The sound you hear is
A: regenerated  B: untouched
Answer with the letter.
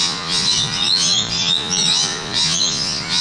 A